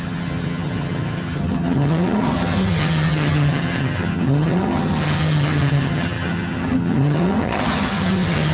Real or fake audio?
fake